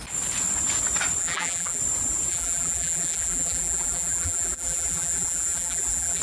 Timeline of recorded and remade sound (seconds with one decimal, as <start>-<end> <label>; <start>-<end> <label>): 0.0-1.2 recorded; 1.2-1.8 remade; 1.8-2.3 recorded; 2.3-6.2 remade